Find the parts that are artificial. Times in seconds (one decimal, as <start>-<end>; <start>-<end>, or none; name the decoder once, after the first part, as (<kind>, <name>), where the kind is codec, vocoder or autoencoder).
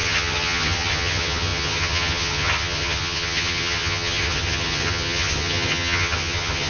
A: 0.0-6.7 (vocoder, HiFi-GAN)